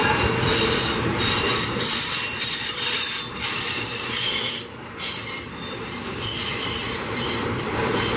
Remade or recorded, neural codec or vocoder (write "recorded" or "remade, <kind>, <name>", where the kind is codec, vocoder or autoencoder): remade, vocoder, BigVGAN v2